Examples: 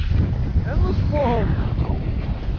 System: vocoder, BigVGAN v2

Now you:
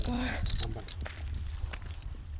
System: none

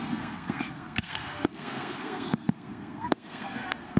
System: codec, SNAC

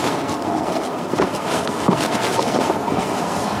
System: codec, SNAC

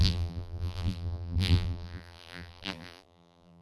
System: vocoder, BigVGAN v2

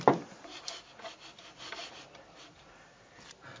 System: none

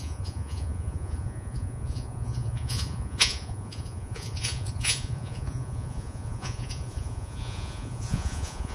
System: vocoder, Vocos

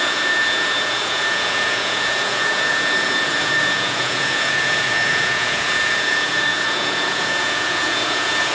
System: vocoder, Vocos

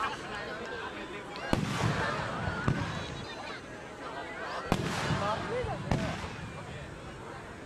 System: none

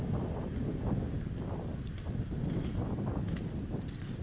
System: none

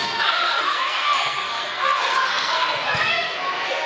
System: codec, SNAC